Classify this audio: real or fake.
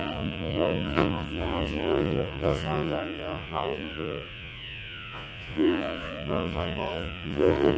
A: fake